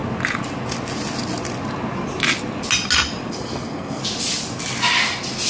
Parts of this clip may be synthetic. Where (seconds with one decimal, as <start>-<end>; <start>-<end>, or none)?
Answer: 3.3-4.0